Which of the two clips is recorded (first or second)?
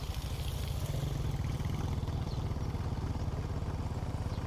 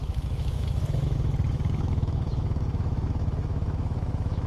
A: first